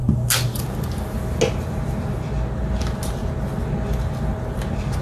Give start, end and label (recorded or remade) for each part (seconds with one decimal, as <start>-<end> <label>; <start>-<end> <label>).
0.0-5.0 recorded